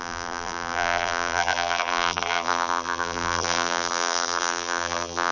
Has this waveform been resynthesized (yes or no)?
yes